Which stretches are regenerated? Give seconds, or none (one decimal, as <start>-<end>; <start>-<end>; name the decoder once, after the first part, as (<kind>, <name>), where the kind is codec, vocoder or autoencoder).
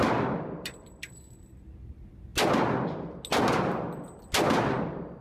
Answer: none